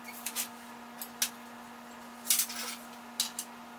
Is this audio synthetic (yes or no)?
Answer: no